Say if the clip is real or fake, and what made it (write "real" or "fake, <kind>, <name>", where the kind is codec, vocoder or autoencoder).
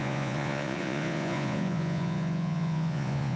fake, vocoder, Vocos